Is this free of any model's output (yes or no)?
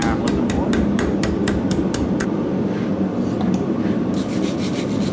yes